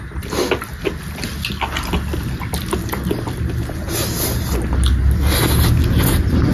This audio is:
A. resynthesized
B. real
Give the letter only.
B